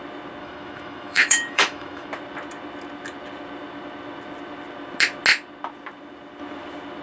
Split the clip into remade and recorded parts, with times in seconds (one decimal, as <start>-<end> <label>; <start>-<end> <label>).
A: 0.0-0.4 recorded; 0.4-2.1 remade; 2.1-7.0 recorded